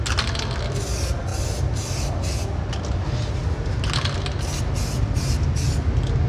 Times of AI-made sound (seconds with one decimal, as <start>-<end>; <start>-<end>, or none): none